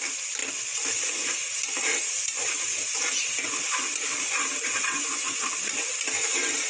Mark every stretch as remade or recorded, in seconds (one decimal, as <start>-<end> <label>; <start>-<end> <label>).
0.0-6.7 recorded